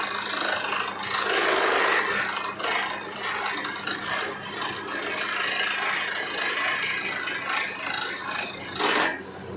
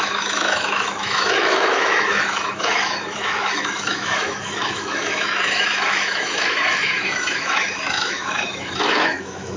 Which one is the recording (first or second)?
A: first